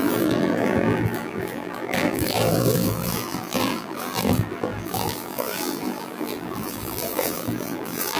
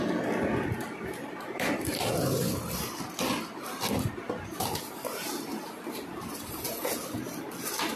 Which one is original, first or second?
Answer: second